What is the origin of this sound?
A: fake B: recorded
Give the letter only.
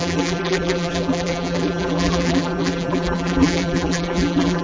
A